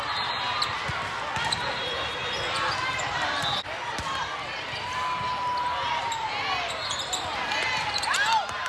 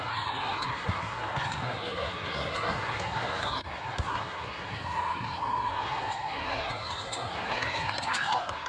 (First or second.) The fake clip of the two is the second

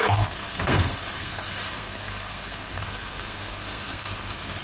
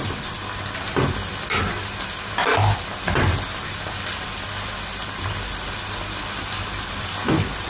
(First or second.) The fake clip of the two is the first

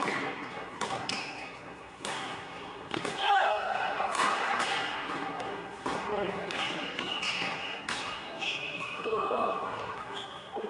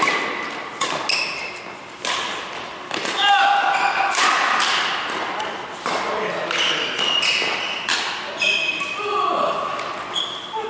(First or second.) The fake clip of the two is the first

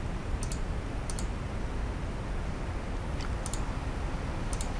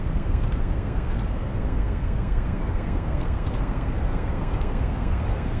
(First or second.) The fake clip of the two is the second